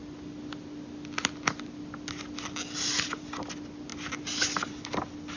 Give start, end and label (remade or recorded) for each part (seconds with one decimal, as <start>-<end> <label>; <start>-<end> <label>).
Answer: 0.0-5.4 recorded